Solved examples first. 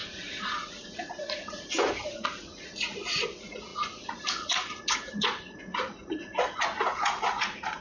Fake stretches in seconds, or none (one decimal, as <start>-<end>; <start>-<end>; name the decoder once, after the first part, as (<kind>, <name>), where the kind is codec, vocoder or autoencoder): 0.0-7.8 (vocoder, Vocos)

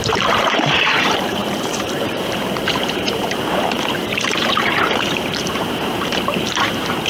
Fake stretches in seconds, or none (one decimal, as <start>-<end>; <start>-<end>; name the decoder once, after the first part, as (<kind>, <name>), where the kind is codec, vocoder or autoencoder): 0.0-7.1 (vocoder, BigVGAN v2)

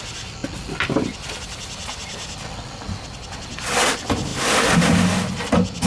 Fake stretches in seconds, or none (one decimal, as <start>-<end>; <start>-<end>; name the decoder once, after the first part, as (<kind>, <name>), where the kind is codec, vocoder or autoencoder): none